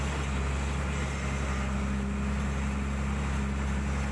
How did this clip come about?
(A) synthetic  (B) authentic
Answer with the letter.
B